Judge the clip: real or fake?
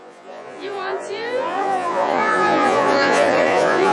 fake